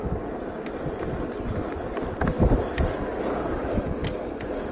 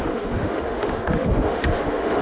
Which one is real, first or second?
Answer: first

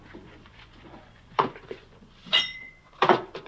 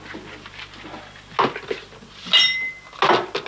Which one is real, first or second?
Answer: second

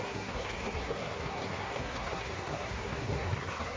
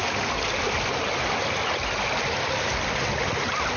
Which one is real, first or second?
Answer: second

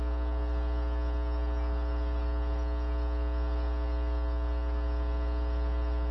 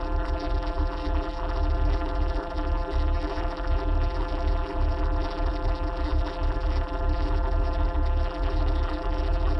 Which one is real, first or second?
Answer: first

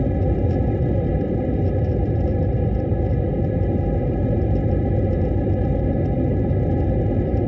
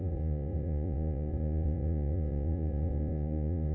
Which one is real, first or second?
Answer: first